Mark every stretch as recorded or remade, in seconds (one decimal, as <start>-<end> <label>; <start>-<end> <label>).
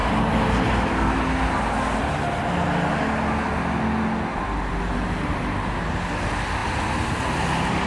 0.0-7.9 recorded